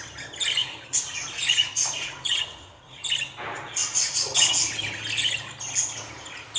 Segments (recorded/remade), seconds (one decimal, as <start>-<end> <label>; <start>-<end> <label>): 0.0-0.6 recorded; 0.6-3.0 remade; 3.0-3.8 recorded; 3.8-4.5 remade; 4.5-6.6 recorded